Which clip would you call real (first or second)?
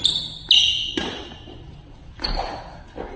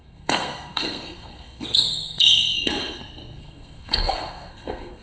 first